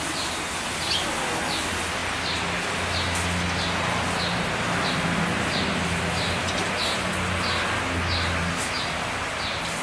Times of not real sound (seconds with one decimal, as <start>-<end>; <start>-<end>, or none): none